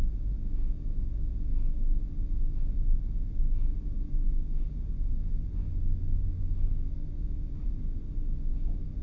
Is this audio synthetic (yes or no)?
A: no